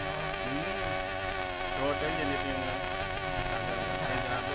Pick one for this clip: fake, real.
real